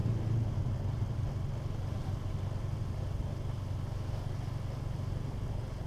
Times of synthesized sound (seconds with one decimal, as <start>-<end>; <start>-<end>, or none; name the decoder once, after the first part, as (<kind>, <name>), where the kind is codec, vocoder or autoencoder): none